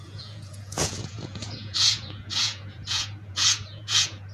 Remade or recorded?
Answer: remade